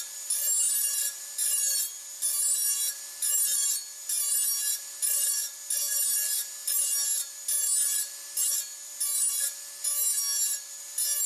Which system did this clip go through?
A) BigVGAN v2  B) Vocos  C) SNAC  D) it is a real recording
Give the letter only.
D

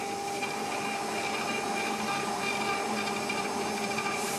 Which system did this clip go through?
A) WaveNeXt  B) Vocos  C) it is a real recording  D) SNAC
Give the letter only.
C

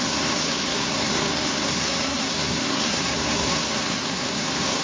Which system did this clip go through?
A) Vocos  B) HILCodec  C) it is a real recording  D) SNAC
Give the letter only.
D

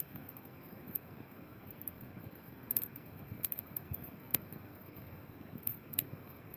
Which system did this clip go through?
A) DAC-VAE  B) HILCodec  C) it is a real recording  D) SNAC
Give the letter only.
D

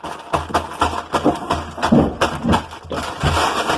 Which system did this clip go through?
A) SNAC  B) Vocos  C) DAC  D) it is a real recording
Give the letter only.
D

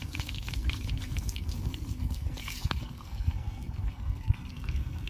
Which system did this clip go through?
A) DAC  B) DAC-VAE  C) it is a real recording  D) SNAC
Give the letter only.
D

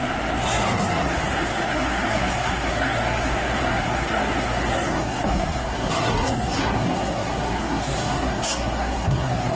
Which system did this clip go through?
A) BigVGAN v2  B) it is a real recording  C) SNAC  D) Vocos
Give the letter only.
C